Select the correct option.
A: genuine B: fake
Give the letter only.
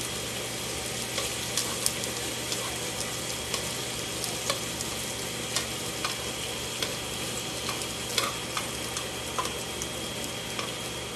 A